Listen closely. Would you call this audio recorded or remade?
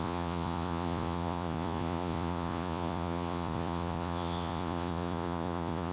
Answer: remade